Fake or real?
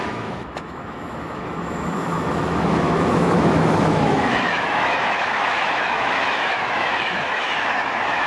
fake